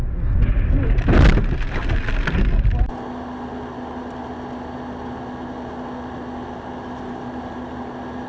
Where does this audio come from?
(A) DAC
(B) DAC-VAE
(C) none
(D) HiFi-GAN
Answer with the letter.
C